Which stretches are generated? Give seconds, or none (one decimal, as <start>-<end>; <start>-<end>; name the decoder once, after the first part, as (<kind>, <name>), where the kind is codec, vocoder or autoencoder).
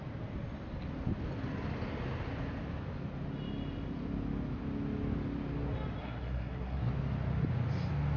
6.0-6.9 (codec, SNAC)